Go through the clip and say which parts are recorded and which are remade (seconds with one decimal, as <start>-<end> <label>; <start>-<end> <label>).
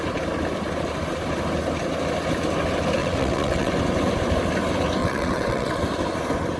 0.0-3.0 recorded; 3.0-3.7 remade; 3.7-5.0 recorded; 5.0-5.8 remade; 5.8-6.6 recorded